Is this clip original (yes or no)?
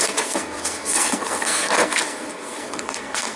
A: no